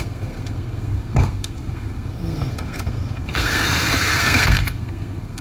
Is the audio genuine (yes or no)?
no